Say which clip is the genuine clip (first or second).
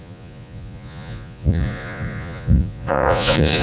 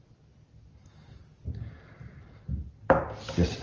second